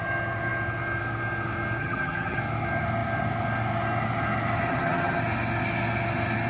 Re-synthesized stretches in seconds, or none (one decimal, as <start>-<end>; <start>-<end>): 1.8-2.4; 4.7-5.2